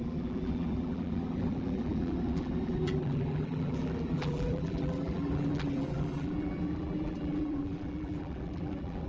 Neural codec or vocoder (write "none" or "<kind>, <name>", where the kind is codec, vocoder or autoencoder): vocoder, BigVGAN v2